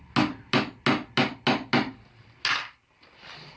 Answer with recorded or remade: recorded